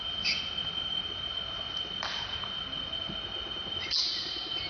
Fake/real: real